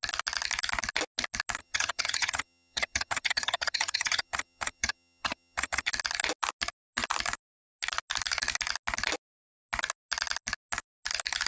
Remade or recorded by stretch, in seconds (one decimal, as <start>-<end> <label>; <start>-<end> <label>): 0.0-1.6 recorded; 1.6-5.9 remade; 5.9-11.5 recorded